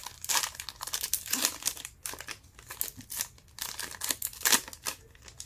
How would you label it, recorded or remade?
recorded